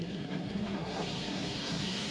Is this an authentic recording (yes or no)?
no